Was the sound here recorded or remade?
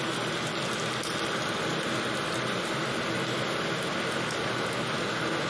recorded